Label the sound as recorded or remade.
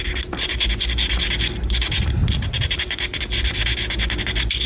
recorded